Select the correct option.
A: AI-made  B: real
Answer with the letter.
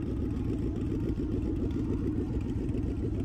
B